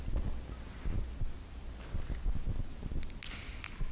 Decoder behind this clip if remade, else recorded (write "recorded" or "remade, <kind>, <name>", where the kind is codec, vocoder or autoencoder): recorded